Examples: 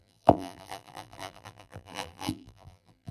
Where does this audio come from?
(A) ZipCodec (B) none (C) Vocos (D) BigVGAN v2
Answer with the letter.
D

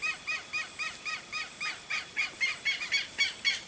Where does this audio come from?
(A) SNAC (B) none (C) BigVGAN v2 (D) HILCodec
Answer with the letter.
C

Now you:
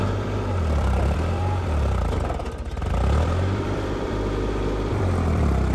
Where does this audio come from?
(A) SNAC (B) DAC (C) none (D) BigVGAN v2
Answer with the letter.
D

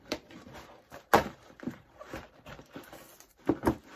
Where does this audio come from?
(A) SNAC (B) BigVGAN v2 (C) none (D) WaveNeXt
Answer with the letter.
B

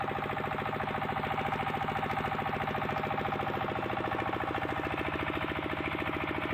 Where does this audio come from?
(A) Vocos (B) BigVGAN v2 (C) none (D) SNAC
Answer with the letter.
C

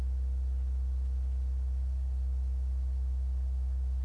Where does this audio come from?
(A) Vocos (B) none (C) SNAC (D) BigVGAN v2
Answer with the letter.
B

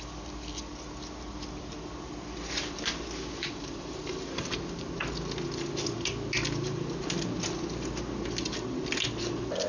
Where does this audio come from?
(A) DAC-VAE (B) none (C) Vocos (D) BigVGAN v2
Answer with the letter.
B